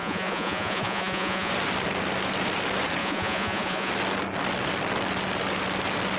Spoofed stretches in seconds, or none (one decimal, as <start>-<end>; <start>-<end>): 0.0-1.5; 3.0-3.9